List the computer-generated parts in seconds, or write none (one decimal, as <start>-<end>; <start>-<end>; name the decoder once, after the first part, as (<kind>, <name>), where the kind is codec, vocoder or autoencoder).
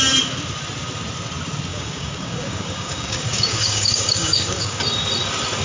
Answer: 1.7-4.8 (codec, DAC)